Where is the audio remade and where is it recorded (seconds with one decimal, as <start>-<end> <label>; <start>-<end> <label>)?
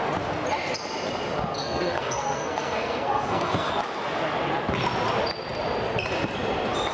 0.0-1.6 recorded; 1.6-3.7 remade; 3.7-6.9 recorded